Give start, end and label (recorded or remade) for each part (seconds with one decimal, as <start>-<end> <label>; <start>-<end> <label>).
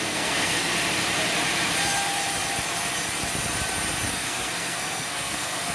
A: 0.0-0.7 remade; 0.7-4.1 recorded; 4.1-5.7 remade